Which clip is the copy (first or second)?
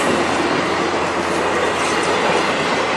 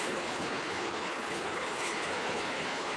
second